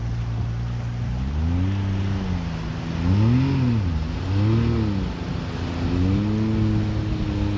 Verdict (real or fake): real